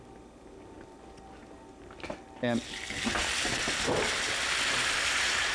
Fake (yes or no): no